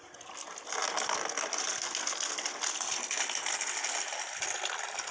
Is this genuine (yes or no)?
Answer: yes